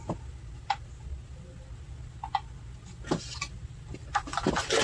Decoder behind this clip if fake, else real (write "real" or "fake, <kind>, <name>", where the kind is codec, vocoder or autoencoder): real